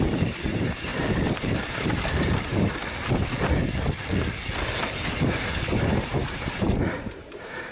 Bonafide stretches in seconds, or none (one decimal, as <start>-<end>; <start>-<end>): 0.9-1.6; 2.8-5.7